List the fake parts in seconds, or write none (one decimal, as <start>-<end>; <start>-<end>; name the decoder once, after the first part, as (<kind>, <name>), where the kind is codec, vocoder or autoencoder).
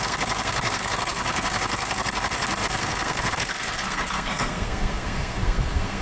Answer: 0.0-6.0 (codec, SNAC)